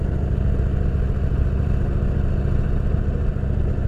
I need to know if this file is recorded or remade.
recorded